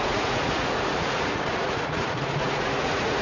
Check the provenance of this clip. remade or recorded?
remade